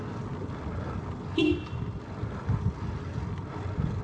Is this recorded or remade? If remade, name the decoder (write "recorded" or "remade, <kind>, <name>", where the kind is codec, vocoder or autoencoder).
recorded